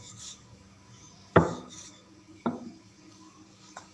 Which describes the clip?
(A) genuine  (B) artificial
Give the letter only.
B